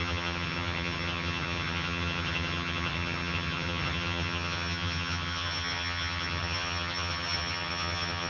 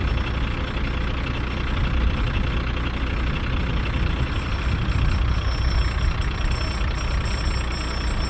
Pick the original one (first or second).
second